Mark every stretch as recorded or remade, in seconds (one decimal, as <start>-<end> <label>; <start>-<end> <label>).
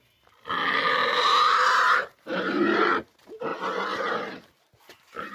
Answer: 0.0-1.0 recorded; 1.0-2.9 remade; 2.9-3.5 recorded; 3.5-5.3 remade